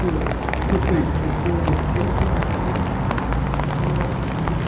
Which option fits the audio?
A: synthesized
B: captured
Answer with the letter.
B